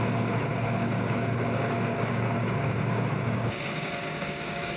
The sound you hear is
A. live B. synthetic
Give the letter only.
B